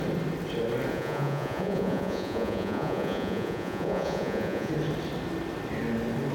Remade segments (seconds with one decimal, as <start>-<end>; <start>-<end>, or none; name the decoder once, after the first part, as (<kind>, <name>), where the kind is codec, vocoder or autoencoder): 0.9-4.7 (vocoder, Vocos)